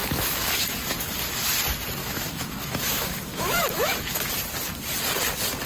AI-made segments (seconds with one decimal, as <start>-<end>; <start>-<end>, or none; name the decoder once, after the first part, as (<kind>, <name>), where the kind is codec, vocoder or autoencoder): 0.0-0.5 (autoencoder, DAC-VAE); 2.0-4.3